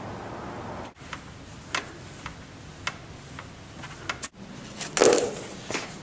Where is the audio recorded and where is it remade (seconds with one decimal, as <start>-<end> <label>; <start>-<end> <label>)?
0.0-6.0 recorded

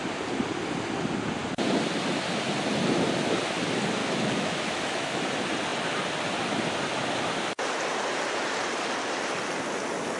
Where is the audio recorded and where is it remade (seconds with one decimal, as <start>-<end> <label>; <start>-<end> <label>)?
0.0-4.0 recorded; 4.0-5.2 remade; 5.2-10.2 recorded

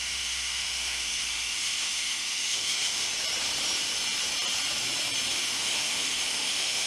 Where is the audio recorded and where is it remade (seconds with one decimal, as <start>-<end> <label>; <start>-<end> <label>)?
0.0-3.1 remade; 3.1-5.3 recorded; 5.3-6.9 remade